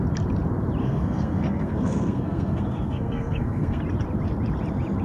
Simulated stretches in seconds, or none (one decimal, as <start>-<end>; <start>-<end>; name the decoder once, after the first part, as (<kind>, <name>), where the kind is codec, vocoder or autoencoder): 0.8-3.8 (codec, SNAC)